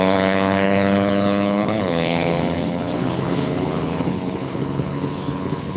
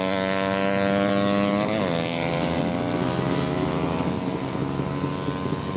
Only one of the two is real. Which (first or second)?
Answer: second